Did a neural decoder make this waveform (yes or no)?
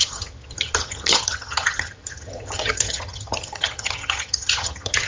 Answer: yes